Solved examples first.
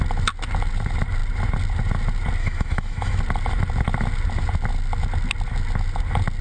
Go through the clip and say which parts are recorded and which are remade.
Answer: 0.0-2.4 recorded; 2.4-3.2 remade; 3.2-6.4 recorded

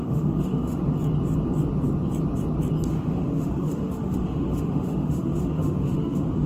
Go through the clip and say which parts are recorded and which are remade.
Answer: 0.0-0.8 remade; 0.8-2.9 recorded; 2.9-6.5 remade

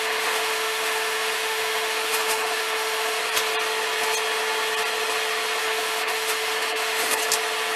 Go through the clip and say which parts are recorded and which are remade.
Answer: 0.0-3.2 remade; 3.2-5.6 recorded; 5.6-7.2 remade; 7.2-7.8 recorded